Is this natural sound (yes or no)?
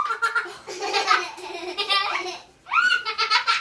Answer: yes